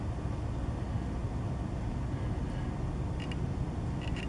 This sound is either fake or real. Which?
real